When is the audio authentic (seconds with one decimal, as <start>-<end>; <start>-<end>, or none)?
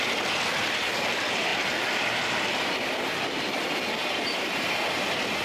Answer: none